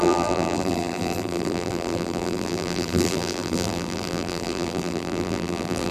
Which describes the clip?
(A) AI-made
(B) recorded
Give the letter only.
A